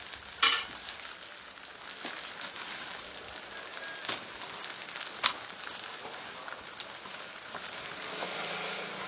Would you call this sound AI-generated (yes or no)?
no